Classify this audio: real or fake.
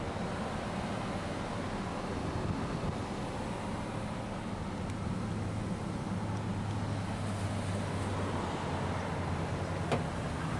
real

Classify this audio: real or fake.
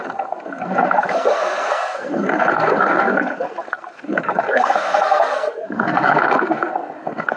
fake